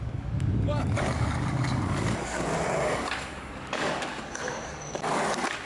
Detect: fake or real fake